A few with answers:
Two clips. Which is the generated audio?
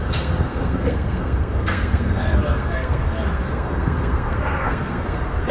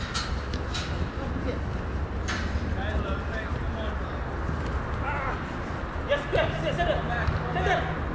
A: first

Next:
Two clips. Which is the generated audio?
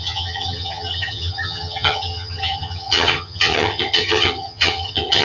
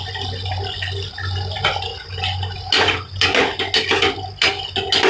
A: first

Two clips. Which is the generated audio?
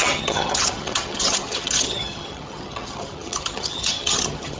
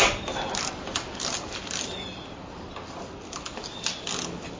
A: first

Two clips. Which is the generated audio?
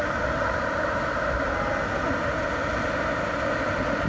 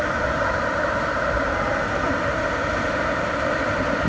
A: second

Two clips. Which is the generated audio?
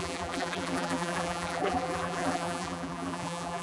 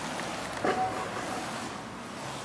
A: first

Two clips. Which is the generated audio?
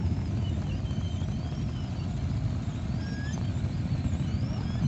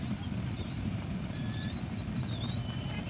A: second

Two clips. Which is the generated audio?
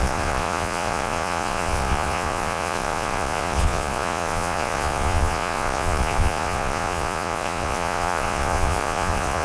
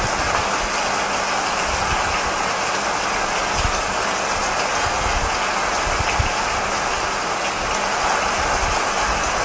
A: first